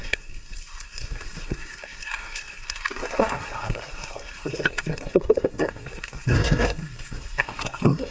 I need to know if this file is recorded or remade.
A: remade